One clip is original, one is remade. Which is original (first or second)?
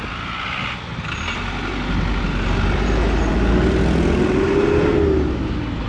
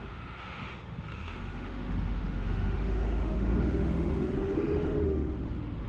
first